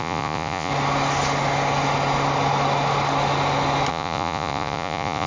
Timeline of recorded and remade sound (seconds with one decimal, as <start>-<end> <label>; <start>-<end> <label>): 0.0-0.7 remade; 0.7-3.9 recorded; 3.9-5.3 remade